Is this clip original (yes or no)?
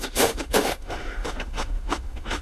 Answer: no